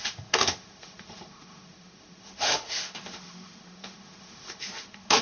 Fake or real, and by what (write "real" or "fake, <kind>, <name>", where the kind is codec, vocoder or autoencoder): fake, autoencoder, DAC-VAE